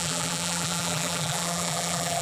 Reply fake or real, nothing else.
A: fake